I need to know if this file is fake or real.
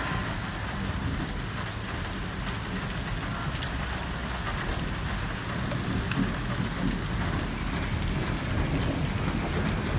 real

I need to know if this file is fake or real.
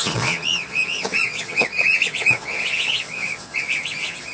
fake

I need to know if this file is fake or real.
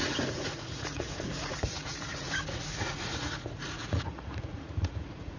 fake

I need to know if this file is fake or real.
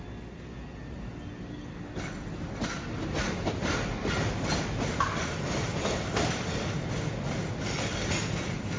real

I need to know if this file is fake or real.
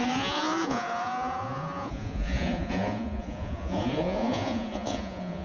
fake